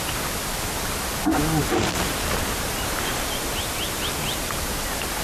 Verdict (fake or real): real